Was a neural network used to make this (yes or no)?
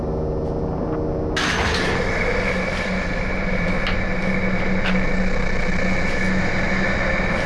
no